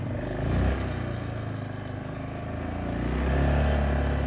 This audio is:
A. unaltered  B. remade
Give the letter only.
A